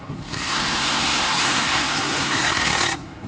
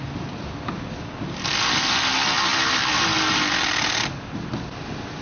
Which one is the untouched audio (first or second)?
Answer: second